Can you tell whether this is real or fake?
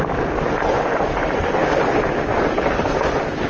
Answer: real